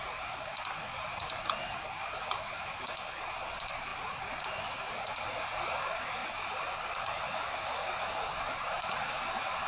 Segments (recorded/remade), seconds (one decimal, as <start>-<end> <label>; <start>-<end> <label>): 0.0-9.7 recorded